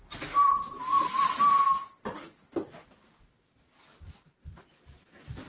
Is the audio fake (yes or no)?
no